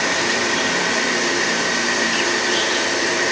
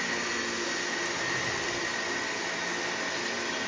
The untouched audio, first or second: second